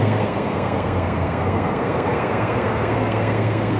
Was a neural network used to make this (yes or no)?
yes